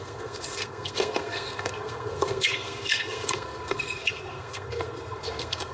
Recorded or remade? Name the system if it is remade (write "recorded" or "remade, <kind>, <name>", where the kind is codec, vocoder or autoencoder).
remade, codec, SNAC